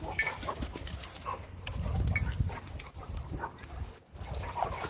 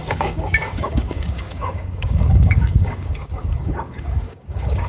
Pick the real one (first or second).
first